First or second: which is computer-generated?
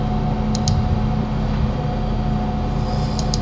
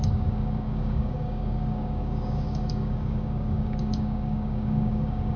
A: second